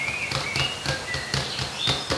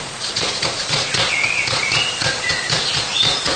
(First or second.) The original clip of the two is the first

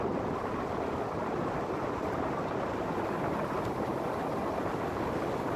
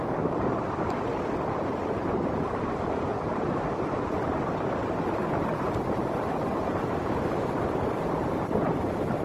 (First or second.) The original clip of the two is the first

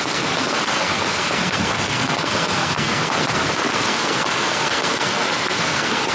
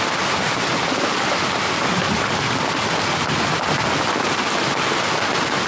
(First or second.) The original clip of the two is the second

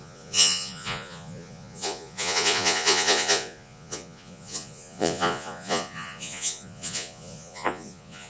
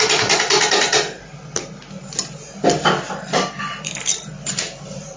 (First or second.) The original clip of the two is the second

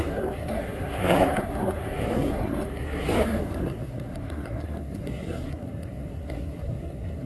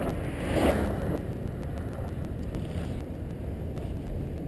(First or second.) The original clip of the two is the second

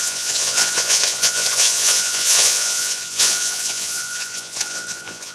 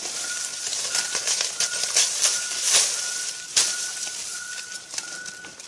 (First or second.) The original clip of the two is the second